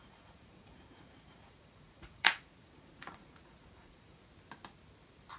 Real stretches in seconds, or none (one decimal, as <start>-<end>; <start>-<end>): 4.2-5.4